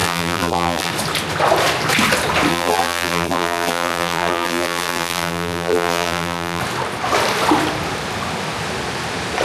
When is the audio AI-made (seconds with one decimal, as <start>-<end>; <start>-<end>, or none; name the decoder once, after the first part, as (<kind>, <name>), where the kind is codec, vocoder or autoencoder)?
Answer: 0.0-0.9 (vocoder, BigVGAN v2); 2.5-6.6

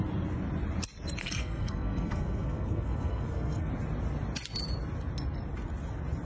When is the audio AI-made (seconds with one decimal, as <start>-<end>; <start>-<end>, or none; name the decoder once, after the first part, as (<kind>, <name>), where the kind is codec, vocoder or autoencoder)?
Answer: 1.2-3.7 (codec, SNAC)

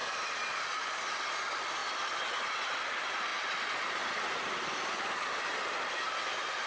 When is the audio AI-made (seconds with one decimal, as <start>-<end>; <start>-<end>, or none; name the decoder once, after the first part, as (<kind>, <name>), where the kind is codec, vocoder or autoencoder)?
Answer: 0.0-1.2 (vocoder, BigVGAN v2)

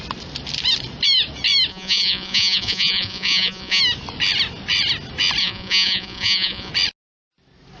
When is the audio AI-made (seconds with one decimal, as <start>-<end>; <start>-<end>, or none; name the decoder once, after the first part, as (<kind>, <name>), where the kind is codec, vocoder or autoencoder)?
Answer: 1.7-3.8 (vocoder, Vocos); 5.4-6.7